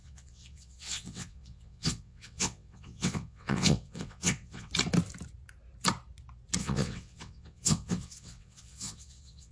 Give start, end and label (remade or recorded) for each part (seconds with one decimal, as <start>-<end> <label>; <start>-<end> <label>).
0.0-4.7 remade; 4.7-6.6 recorded; 6.6-9.5 remade